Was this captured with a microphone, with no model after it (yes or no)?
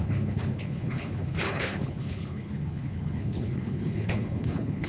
no